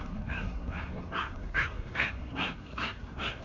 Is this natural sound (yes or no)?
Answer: no